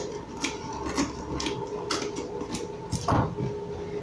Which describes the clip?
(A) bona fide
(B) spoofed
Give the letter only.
A